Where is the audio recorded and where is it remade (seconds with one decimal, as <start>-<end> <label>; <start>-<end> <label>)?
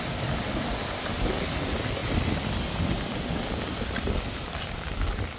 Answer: 0.0-5.4 recorded